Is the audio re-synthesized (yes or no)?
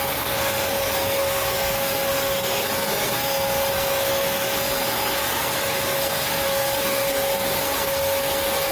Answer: yes